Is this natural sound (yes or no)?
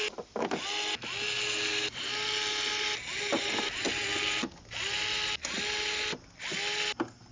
yes